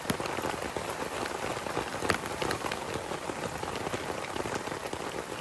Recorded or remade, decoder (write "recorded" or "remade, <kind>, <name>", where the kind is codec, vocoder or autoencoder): recorded